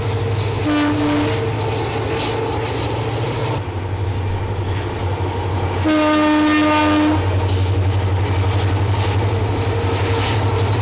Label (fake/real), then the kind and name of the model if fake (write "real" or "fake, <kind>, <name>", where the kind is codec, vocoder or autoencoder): real